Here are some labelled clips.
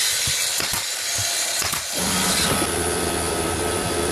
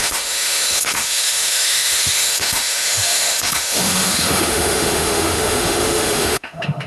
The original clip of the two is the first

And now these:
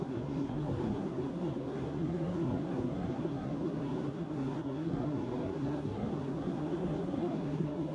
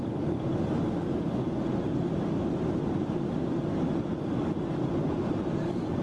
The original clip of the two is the second